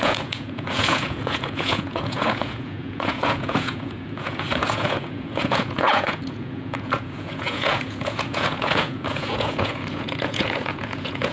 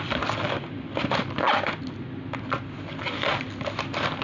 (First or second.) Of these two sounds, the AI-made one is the first